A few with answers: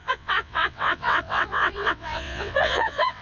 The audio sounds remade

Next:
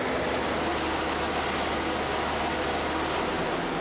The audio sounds recorded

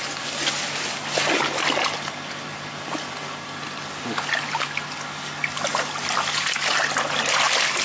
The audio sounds recorded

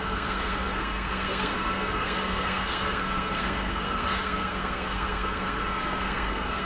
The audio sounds remade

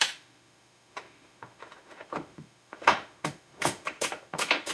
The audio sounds remade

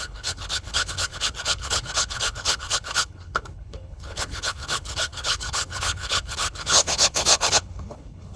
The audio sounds remade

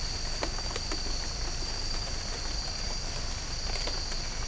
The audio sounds recorded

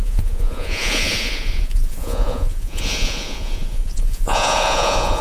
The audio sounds remade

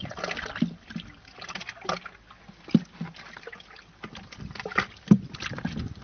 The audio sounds recorded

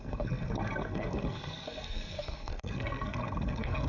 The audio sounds remade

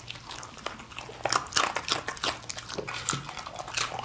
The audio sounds recorded